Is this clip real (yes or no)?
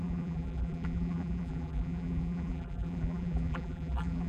no